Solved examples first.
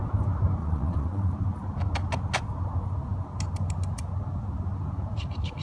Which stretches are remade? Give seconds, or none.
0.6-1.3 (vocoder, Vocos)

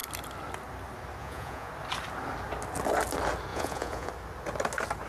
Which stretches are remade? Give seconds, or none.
1.2-1.7 (vocoder, Vocos); 3.5-4.1

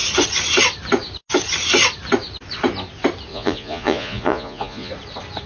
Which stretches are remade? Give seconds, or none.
3.3-4.9 (vocoder, Vocos)

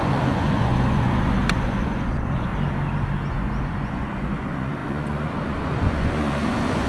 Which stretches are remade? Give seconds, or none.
0.0-2.5 (vocoder, Vocos); 3.3-6.9

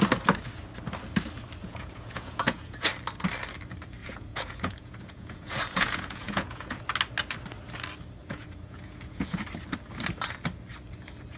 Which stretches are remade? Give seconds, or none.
1.6-2.9 (vocoder, Vocos); 4.0-6.8; 8.2-9.4